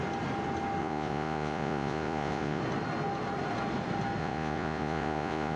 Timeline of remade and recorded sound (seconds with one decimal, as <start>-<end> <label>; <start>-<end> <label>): 0.0-0.8 recorded; 0.8-2.6 remade; 2.6-4.2 recorded; 4.2-5.6 remade